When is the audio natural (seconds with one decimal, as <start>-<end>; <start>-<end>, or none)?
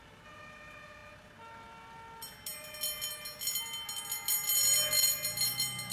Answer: 0.0-5.9